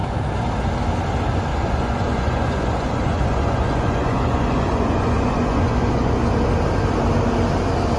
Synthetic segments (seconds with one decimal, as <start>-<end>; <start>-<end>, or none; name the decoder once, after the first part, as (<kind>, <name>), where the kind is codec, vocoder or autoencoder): 1.5-6.3 (vocoder, Vocos)